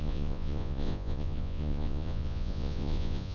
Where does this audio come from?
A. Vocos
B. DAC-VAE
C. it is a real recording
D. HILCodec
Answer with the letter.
A